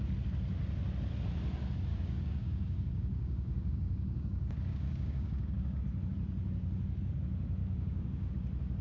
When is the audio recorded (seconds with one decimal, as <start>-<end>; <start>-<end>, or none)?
0.0-1.9; 5.8-7.6; 8.3-8.8